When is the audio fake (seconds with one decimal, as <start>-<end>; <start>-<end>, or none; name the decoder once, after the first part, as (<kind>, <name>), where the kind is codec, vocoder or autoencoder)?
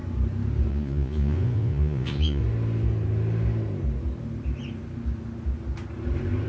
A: 0.7-2.4 (vocoder, Vocos)